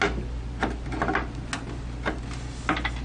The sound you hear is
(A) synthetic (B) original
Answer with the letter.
B